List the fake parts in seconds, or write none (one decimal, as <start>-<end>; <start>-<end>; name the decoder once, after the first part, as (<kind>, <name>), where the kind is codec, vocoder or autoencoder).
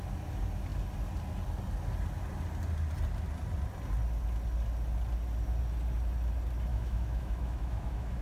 6.7-8.2 (autoencoder, DAC-VAE)